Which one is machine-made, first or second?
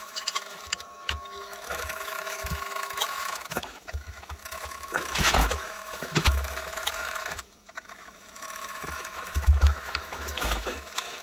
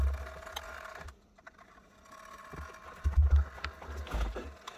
first